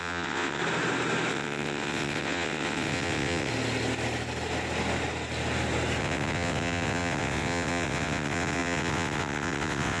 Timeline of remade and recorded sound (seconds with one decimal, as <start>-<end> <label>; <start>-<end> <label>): 0.0-0.6 remade; 0.6-1.3 recorded; 1.3-3.5 remade; 3.5-6.0 recorded; 6.0-10.0 remade